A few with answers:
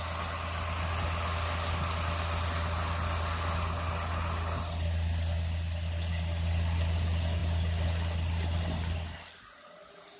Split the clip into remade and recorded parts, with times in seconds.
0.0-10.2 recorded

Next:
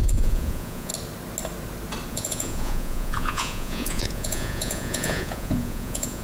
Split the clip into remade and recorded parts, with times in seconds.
0.0-0.9 remade; 0.9-2.1 recorded; 2.1-6.2 remade